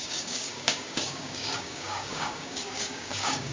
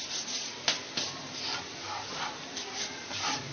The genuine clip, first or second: second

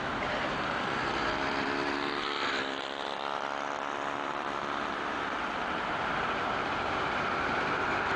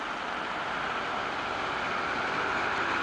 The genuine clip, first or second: second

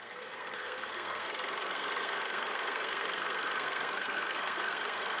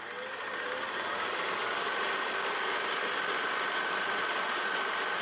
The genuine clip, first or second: second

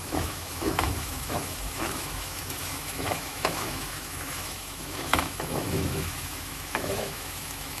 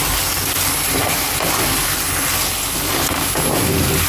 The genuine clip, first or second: second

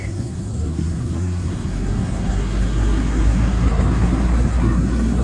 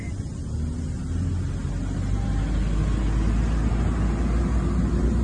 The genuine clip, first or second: second